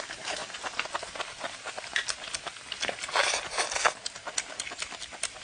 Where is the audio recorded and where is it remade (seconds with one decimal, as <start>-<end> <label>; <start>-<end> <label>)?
0.0-5.4 recorded